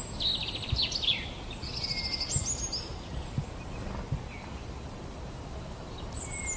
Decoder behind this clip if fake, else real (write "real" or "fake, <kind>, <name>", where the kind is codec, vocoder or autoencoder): real